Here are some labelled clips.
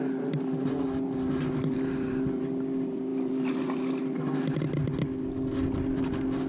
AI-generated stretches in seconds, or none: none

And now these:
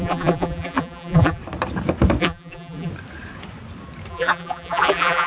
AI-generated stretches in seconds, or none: 0.0-1.4 (vocoder, BigVGAN v2); 2.2-2.9; 4.1-5.3

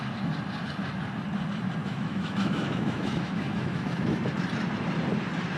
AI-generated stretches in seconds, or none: 1.8-4.2 (autoencoder, DAC-VAE)

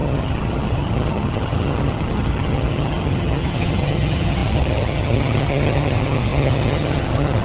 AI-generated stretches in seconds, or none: 0.0-7.4 (vocoder, HiFi-GAN)

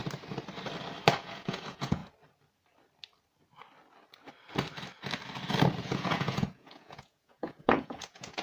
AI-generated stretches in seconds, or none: 1.2-2.0 (vocoder, Vocos); 5.8-8.4

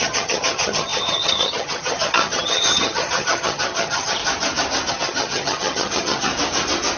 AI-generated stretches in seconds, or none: 0.0-4.2 (vocoder, HiFi-GAN); 4.9-6.3